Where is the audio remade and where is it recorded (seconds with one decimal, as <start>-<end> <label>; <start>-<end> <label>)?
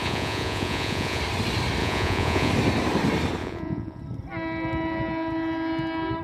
0.0-1.2 remade; 1.2-1.8 recorded; 1.8-2.5 remade; 2.5-3.4 recorded; 3.4-4.0 remade; 4.0-6.2 recorded